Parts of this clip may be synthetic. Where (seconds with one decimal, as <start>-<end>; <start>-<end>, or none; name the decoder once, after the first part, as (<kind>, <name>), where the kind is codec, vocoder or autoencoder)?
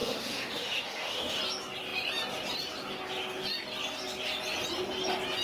0.0-1.4 (autoencoder, DAC-VAE)